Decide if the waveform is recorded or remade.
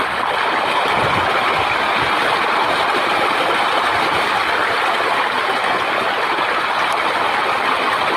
recorded